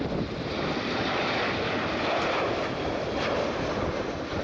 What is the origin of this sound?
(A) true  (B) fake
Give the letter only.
A